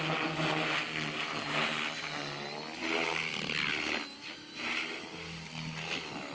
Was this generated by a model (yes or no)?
no